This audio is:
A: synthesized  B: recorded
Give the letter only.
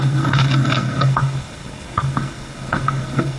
A